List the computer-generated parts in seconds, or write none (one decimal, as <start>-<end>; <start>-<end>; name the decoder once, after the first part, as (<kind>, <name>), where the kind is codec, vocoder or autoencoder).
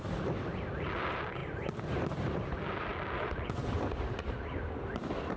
none